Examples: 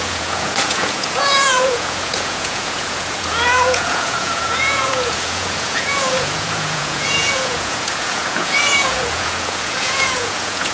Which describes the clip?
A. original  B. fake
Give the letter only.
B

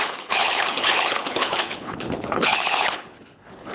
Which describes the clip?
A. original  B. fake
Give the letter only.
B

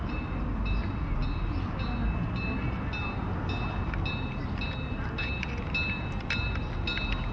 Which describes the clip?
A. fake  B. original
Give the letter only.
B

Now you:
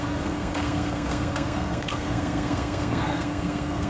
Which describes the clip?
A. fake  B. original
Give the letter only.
A